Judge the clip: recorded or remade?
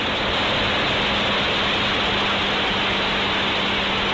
recorded